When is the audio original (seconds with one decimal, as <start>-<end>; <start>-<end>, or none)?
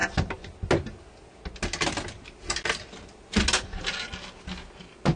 0.0-5.2